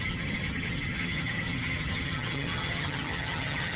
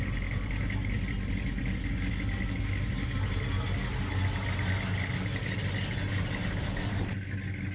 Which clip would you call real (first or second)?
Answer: second